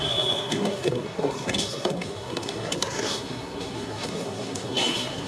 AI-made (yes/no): yes